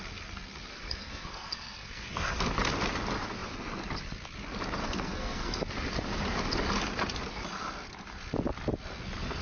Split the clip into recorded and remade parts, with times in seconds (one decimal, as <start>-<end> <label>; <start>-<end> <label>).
0.0-0.7 recorded; 0.7-2.4 remade; 2.4-4.8 recorded; 4.8-5.6 remade; 5.6-9.4 recorded

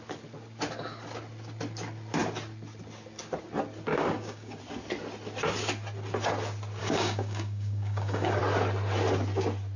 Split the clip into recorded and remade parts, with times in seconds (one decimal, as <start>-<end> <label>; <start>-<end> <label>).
0.0-3.9 recorded; 3.9-4.6 remade; 4.6-6.8 recorded; 6.8-8.4 remade; 8.4-9.8 recorded